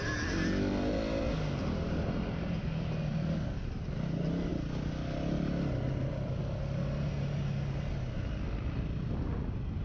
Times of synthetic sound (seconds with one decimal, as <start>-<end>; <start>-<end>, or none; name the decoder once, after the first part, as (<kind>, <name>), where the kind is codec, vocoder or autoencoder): none